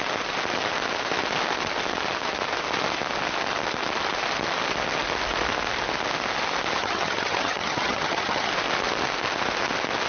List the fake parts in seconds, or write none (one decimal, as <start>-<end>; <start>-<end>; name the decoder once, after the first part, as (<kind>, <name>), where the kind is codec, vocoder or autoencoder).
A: 6.8-8.5 (vocoder, HiFi-GAN)